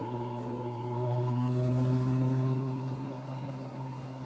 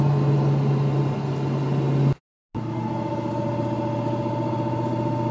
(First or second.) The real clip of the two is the second